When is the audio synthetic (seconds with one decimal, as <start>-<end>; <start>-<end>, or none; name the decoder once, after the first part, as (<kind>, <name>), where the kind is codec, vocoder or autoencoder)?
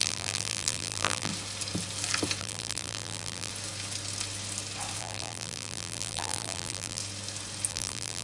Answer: 0.0-1.3 (vocoder, BigVGAN v2); 2.4-3.5; 5.0-7.0; 7.7-8.2